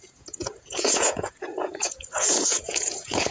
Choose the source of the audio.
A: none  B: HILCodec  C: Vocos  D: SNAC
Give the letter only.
C